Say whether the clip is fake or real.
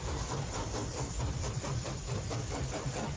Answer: fake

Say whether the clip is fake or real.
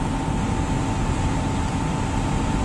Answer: real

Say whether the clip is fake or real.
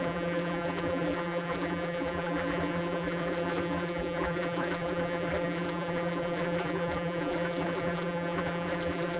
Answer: fake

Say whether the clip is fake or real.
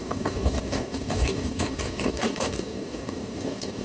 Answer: fake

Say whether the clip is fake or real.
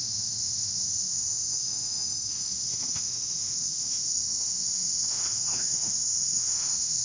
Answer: fake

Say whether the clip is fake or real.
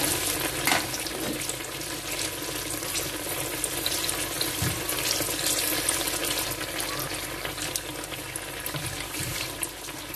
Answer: real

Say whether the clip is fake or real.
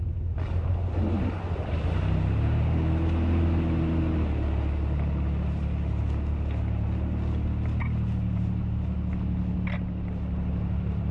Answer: real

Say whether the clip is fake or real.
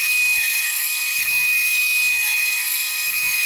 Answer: fake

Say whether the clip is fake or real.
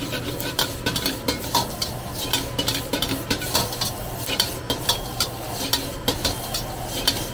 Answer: real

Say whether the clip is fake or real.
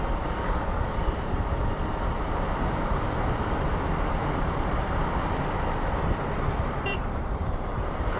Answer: fake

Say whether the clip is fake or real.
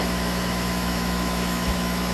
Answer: fake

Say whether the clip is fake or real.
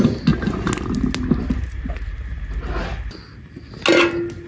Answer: real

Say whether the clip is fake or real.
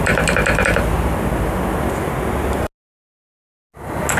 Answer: real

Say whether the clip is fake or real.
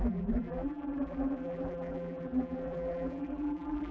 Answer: fake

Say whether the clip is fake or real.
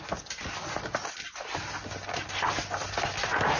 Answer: real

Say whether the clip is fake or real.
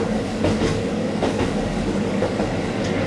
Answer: fake